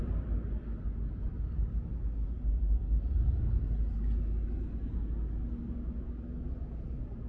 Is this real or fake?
real